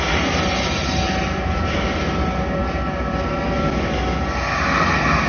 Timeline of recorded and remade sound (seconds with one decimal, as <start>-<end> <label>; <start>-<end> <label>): 0.0-5.3 recorded